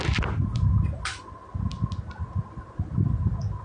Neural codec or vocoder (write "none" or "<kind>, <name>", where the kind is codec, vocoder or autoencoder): none